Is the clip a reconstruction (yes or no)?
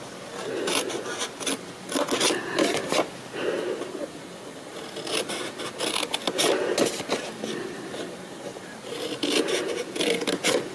no